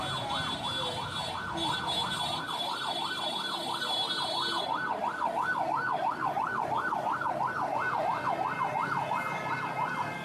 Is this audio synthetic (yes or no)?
no